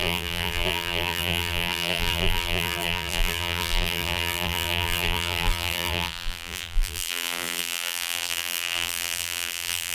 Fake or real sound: fake